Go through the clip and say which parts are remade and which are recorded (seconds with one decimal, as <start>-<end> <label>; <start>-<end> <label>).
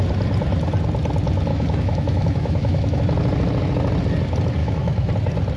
0.0-1.5 recorded; 1.5-3.0 remade; 3.0-4.6 recorded; 4.6-5.1 remade; 5.1-5.6 recorded